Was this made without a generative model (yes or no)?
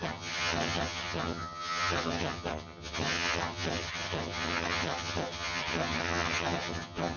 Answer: no